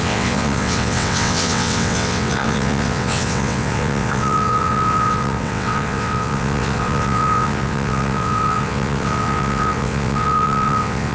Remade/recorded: remade